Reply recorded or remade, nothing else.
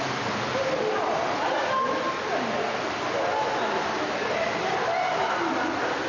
recorded